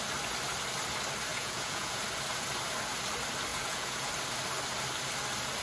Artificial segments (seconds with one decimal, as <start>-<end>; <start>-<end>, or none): 1.3-2.0; 3.5-4.1